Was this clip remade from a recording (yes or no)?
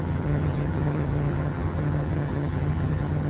yes